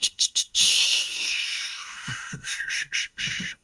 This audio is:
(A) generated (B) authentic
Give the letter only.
A